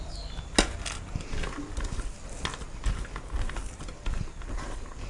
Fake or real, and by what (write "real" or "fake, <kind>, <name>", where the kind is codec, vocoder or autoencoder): real